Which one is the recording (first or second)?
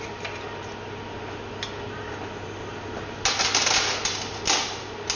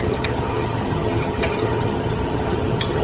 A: first